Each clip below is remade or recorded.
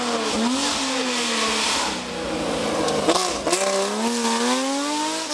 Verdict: recorded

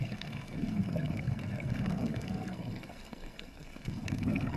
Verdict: remade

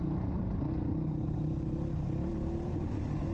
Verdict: recorded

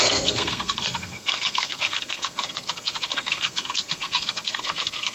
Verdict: remade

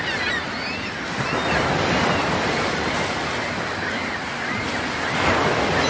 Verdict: recorded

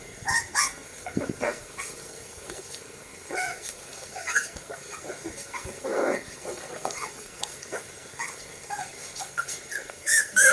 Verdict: remade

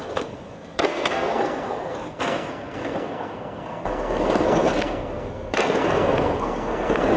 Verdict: remade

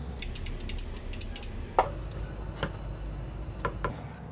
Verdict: recorded